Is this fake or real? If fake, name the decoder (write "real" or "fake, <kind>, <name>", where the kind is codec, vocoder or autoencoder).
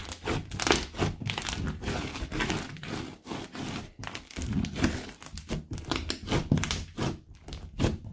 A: real